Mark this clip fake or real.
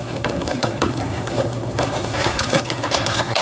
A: fake